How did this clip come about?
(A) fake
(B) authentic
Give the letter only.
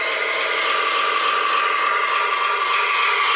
B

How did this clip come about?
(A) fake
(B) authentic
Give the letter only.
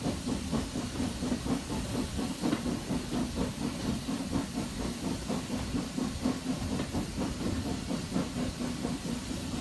B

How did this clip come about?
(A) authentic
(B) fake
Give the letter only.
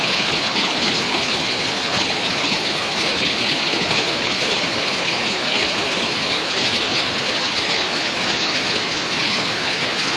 B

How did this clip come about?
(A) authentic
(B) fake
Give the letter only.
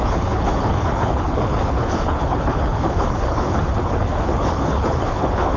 B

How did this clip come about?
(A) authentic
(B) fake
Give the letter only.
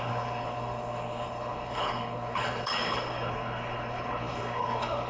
B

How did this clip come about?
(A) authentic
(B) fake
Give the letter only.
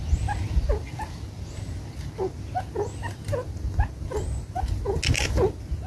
A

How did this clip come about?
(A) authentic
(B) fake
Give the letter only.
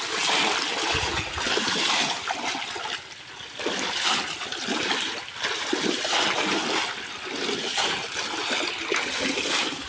A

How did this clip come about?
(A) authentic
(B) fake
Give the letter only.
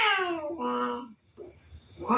A